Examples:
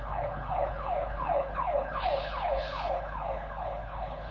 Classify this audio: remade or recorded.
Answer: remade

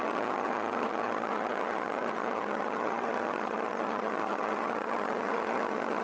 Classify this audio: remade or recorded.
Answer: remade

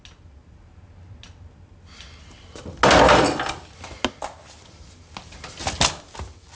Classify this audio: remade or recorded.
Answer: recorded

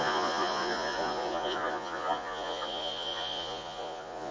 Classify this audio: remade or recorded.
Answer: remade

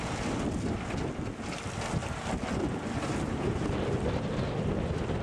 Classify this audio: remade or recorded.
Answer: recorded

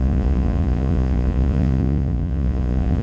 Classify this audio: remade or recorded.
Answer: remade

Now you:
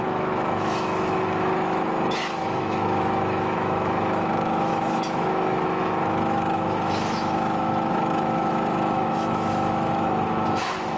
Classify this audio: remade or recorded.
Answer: remade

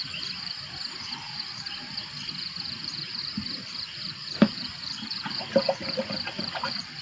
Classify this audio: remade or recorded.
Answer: remade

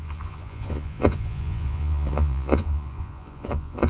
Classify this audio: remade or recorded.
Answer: remade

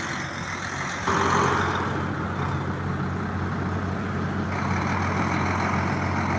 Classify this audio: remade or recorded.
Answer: recorded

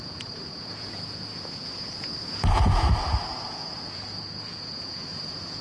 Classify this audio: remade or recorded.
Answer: remade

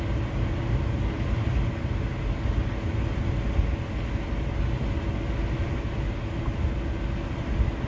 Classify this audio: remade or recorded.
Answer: recorded